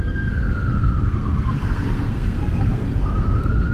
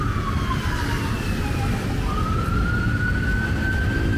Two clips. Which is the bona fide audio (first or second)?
second